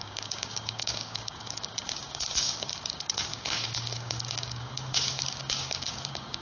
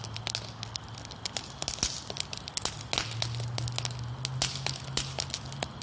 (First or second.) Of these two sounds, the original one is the second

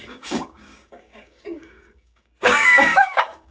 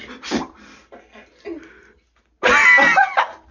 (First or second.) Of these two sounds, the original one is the second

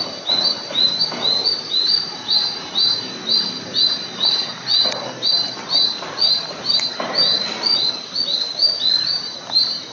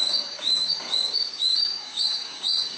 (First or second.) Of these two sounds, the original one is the first